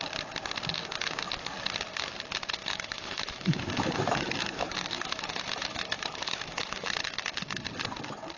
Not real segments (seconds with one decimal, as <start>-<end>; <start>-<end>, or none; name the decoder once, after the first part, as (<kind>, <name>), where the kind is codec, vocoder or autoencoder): 2.6-6.9 (autoencoder, DAC-VAE)